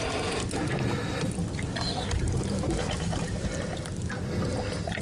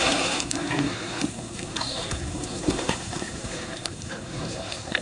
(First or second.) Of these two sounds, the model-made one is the second